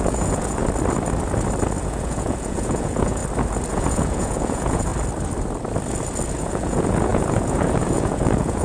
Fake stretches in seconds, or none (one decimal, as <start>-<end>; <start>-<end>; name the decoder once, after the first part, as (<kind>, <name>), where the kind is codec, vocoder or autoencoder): 0.0-0.6 (vocoder, Vocos); 1.8-3.2; 3.7-4.9; 6.4-8.6